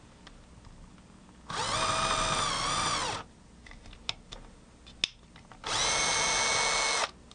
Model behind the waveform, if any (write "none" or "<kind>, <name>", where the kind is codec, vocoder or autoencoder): none